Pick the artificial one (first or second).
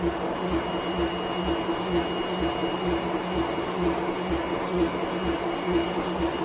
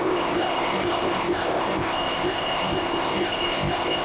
second